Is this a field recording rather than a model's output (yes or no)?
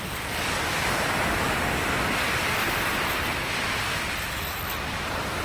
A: yes